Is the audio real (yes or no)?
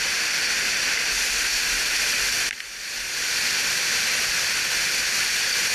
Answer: yes